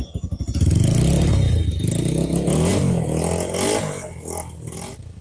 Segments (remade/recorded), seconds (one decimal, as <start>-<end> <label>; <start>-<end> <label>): 0.0-5.2 recorded